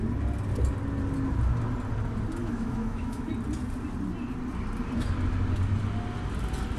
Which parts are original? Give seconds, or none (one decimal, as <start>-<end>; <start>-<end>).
0.0-2.4; 3.3-6.8

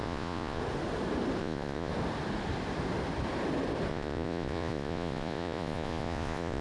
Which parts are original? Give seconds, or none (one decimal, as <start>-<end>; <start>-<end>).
0.6-1.4; 1.9-3.9

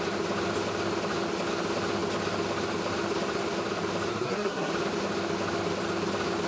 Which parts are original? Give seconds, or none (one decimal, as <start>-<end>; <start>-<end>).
0.0-4.1; 4.7-6.5

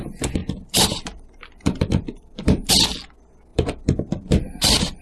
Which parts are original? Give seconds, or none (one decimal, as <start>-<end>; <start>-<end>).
0.0-0.4; 2.7-3.5

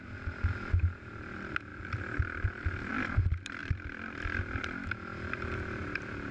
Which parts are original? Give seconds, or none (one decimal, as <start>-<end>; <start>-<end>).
1.7-2.9

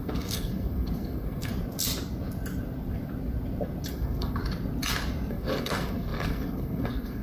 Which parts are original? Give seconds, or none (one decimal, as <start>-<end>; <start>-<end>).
1.5-3.9; 4.4-5.3